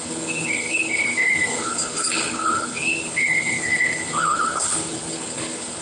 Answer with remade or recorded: remade